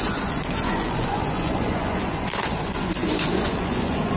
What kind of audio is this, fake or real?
fake